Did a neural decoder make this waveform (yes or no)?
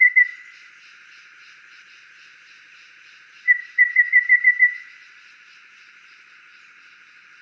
no